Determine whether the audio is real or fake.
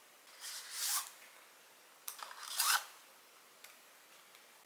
real